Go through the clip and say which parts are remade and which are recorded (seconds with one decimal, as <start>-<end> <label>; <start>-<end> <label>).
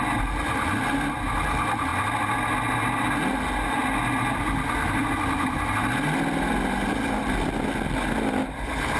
0.0-9.0 recorded